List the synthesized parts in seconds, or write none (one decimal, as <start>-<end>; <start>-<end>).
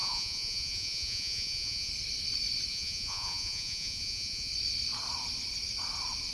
0.0-1.9; 2.7-4.5